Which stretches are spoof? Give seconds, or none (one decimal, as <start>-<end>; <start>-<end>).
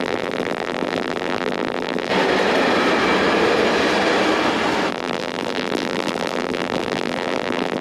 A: 0.0-2.1; 4.9-7.8